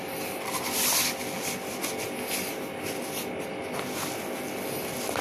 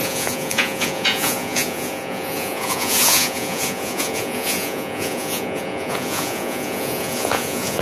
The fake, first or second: second